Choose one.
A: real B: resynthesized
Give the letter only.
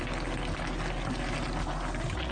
A